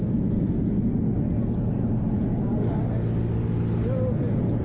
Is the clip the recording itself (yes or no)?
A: yes